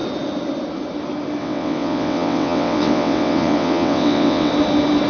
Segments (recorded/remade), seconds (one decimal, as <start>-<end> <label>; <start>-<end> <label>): 0.0-1.4 recorded; 1.4-4.5 remade; 4.5-5.1 recorded

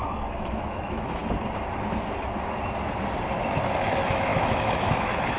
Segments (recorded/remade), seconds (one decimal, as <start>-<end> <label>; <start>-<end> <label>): 0.0-1.2 remade; 1.2-3.8 recorded; 3.8-5.4 remade